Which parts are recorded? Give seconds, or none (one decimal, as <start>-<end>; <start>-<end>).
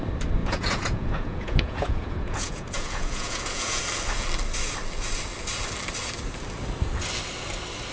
0.0-0.4; 3.8-7.9